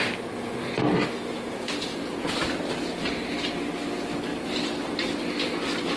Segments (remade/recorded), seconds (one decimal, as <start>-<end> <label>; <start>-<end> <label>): 0.0-1.9 recorded; 1.9-2.8 remade; 2.8-4.3 recorded; 4.3-5.2 remade; 5.2-6.0 recorded